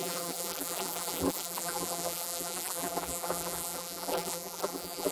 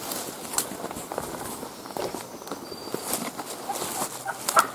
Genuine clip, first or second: second